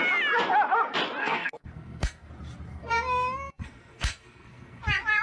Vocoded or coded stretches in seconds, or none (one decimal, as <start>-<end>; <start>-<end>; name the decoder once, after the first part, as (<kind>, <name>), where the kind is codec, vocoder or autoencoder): 1.2-2.3 (codec, SNAC); 2.7-4.8